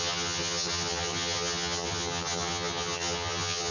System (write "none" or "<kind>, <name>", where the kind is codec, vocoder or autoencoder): vocoder, HiFi-GAN